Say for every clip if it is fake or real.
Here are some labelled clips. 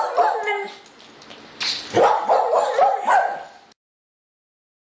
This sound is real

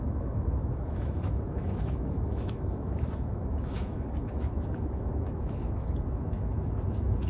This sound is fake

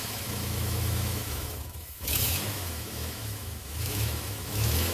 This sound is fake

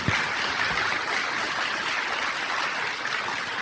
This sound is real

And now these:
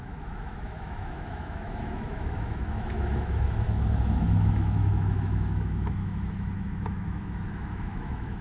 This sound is fake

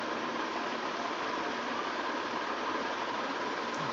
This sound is real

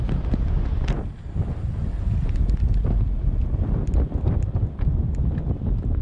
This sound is real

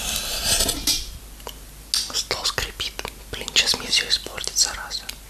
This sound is real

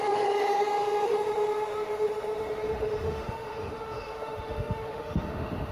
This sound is fake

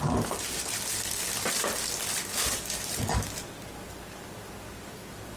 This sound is real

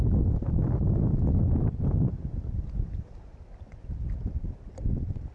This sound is real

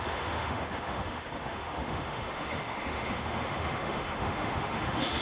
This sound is fake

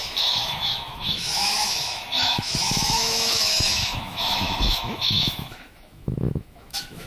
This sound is fake